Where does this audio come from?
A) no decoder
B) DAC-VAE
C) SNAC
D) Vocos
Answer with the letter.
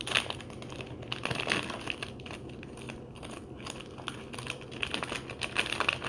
A